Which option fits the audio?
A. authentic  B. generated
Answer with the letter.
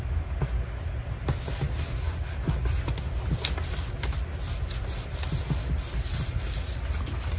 A